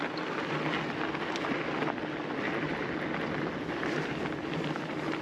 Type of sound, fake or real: real